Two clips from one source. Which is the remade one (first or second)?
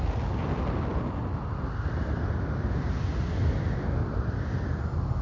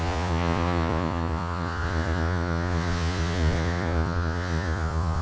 second